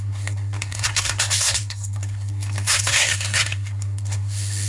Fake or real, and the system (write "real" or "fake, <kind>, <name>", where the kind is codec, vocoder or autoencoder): fake, codec, SNAC